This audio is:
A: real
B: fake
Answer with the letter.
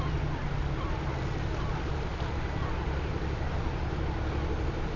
A